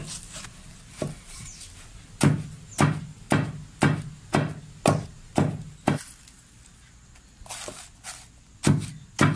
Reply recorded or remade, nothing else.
recorded